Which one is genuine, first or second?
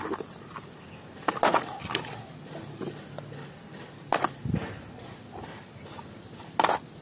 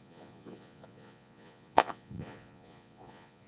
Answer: first